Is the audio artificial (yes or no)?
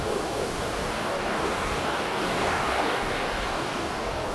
yes